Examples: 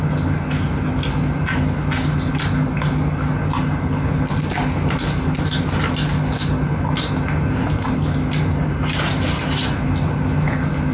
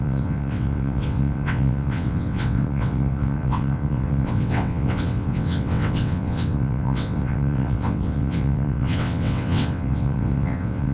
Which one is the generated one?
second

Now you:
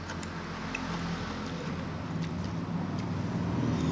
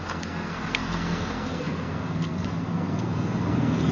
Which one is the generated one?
second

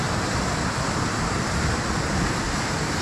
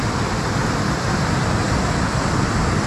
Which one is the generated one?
first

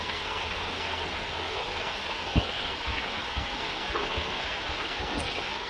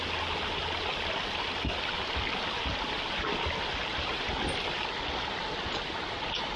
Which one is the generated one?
first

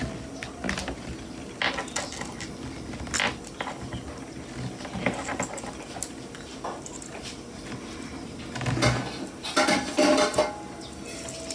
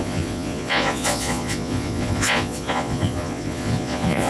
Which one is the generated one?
second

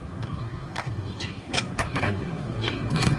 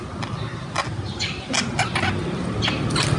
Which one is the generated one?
first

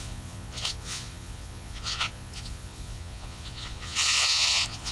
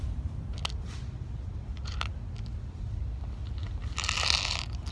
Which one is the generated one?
first